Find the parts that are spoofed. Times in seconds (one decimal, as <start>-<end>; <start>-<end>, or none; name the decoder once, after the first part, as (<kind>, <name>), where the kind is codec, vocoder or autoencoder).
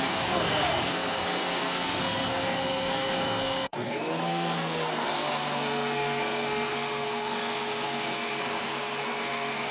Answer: 0.0-9.7 (codec, SNAC)